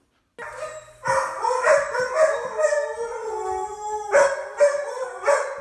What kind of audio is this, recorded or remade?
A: recorded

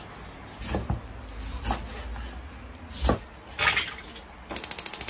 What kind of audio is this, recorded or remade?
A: recorded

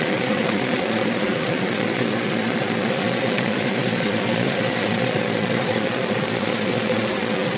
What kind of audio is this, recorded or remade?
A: remade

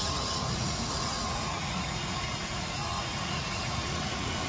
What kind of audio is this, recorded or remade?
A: remade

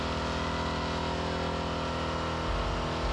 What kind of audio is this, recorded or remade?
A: recorded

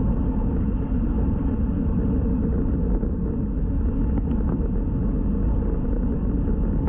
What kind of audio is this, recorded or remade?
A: recorded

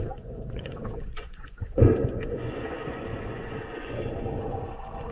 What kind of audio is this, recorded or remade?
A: remade